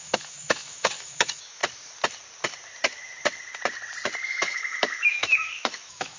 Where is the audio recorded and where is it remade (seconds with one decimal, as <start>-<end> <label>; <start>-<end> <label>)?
0.0-1.6 remade; 1.6-4.3 recorded; 4.3-6.2 remade